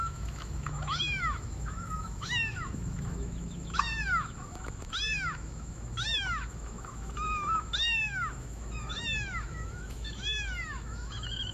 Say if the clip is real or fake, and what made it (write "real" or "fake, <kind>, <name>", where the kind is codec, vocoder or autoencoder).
fake, autoencoder, DAC-VAE